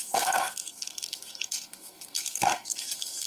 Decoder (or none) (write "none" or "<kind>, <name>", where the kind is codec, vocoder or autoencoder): codec, SNAC